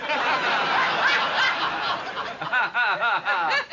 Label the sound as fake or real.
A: real